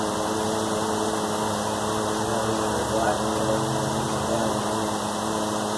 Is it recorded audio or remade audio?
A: recorded